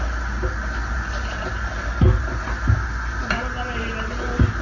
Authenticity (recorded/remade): recorded